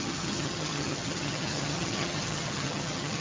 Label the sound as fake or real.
fake